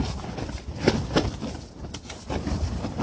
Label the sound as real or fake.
real